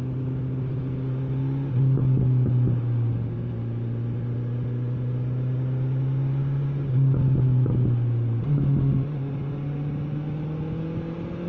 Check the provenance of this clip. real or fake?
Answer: real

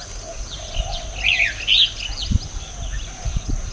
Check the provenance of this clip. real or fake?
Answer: real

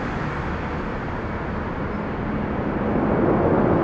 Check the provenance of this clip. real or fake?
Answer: real